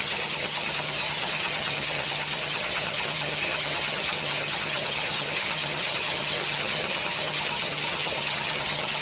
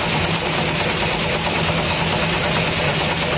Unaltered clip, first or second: second